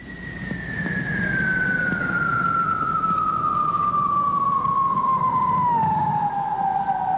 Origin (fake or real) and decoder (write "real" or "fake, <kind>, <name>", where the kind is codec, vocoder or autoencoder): real